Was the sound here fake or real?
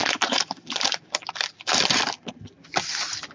real